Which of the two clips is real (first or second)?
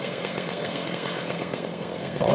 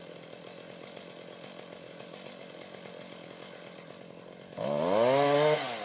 second